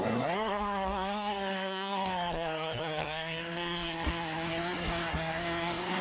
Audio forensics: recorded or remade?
remade